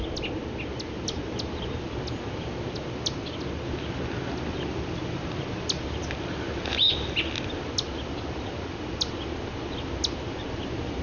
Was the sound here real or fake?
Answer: real